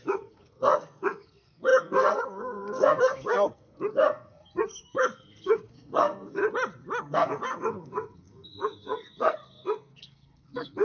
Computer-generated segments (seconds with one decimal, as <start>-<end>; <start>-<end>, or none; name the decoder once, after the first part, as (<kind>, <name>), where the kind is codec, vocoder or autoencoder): 0.0-6.4 (codec, SNAC); 7.0-10.8